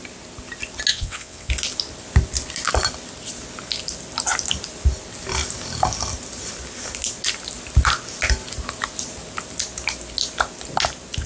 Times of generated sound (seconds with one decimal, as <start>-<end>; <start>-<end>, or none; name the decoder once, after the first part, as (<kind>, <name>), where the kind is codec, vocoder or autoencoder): 0.9-1.5 (vocoder, WaveNeXt)